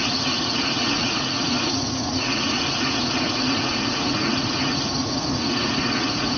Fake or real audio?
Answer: fake